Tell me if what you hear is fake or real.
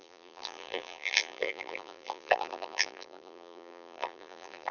fake